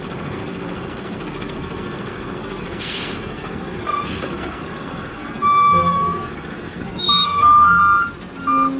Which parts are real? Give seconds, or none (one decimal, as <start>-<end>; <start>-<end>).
7.8-8.8